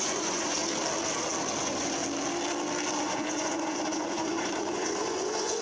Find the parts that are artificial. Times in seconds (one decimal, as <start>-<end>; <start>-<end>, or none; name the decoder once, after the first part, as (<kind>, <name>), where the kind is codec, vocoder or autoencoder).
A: 0.0-0.6 (vocoder, Vocos); 1.6-2.0; 3.0-5.6